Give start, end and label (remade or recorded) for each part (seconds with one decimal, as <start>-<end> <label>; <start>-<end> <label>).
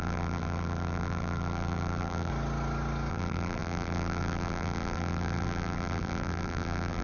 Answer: 0.0-2.3 remade; 2.3-3.1 recorded; 3.1-7.0 remade